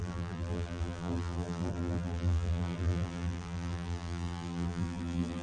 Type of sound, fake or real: fake